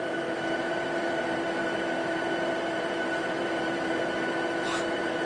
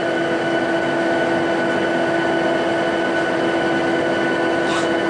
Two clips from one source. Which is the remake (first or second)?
first